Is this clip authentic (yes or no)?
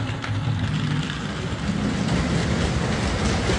yes